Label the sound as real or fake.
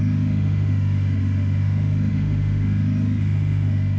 fake